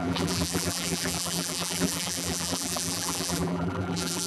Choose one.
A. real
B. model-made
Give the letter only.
B